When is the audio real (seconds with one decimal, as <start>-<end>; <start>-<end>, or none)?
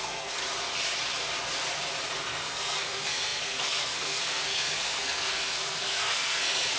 0.4-2.2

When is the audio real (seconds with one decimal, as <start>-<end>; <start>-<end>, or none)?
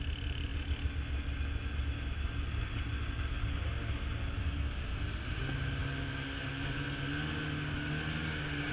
0.0-8.7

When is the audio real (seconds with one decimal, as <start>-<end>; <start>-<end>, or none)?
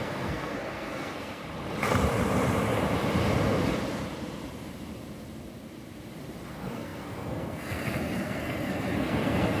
1.4-6.5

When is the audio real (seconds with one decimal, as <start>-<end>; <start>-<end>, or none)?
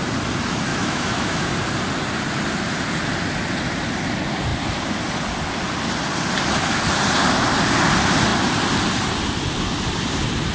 0.0-0.7; 1.5-10.5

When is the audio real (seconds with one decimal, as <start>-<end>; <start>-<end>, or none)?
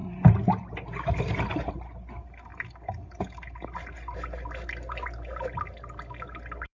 0.0-6.7